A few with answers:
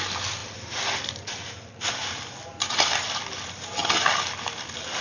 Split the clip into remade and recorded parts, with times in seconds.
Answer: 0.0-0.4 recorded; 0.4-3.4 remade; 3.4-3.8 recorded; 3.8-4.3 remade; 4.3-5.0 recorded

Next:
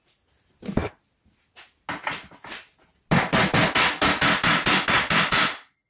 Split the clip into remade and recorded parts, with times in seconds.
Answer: 0.0-5.9 recorded

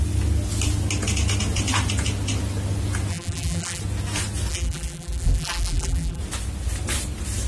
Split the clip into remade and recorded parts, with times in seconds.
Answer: 0.0-3.1 recorded; 3.1-3.8 remade; 3.8-4.5 recorded; 4.5-6.2 remade; 6.2-7.5 recorded

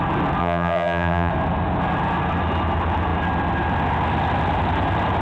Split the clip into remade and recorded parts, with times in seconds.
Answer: 0.0-0.4 recorded; 0.4-1.3 remade; 1.3-5.2 recorded